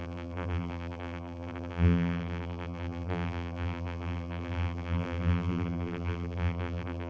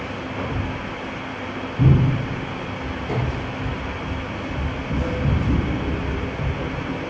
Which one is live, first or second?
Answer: second